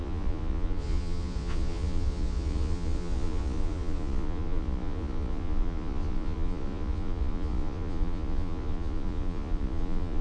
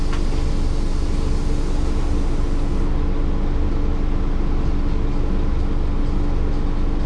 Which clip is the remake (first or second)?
first